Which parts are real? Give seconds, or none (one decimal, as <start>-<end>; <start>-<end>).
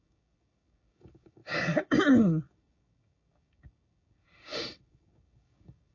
none